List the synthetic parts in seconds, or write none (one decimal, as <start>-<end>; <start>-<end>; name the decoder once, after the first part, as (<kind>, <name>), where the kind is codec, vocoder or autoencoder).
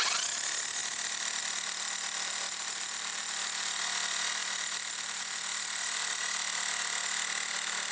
none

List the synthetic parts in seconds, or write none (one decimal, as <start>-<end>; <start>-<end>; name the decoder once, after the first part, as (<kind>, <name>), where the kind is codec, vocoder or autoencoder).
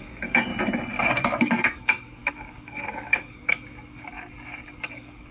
0.0-0.5 (codec, DAC); 1.1-5.3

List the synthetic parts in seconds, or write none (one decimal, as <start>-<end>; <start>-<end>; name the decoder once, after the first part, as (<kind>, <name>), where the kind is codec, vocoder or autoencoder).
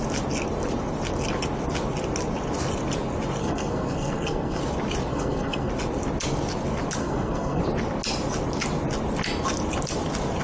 3.4-4.6 (codec, SNAC); 5.1-5.7; 7.0-7.6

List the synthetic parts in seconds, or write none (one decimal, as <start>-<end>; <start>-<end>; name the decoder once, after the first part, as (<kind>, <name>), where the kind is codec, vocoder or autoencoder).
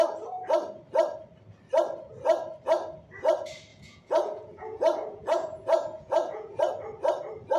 3.7-6.6 (vocoder, Vocos)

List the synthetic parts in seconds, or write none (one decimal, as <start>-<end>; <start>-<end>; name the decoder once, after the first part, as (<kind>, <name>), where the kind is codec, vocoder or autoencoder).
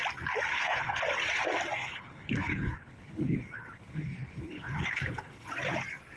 0.5-1.0 (codec, HILCodec); 1.8-5.5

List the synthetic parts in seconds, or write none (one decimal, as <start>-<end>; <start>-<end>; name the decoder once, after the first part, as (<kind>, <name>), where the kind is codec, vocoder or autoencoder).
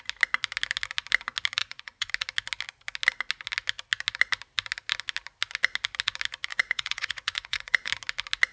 1.6-2.1 (vocoder, Vocos); 6.5-7.9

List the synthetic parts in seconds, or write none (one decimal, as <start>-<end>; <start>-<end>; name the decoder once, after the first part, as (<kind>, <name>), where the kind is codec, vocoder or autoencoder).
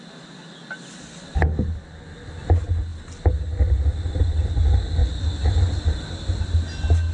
none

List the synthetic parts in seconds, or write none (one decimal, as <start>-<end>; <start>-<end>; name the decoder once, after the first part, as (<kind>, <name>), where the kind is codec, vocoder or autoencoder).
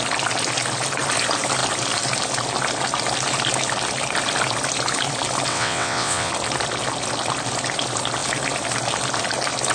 5.5-6.3 (vocoder, WaveNeXt)